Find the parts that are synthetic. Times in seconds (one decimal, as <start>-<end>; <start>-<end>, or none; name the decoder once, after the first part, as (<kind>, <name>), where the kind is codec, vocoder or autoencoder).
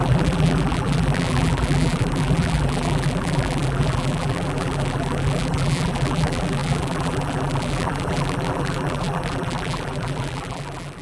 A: 0.0-11.0 (vocoder, BigVGAN v2)